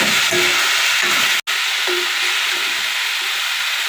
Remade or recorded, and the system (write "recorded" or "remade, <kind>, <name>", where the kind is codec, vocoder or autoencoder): recorded